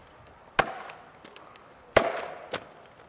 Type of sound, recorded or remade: recorded